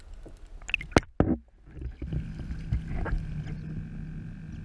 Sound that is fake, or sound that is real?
real